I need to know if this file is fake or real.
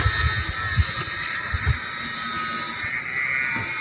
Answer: real